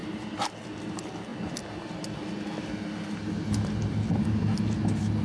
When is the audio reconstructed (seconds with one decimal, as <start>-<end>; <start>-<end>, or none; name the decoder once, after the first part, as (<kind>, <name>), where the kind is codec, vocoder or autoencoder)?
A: none